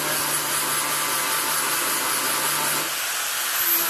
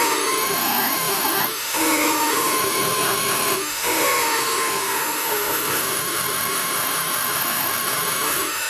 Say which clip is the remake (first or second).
second